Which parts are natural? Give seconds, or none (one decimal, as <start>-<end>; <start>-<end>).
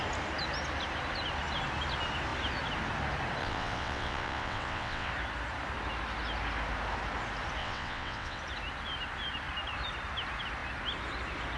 0.0-3.4; 5.1-7.6; 8.4-11.6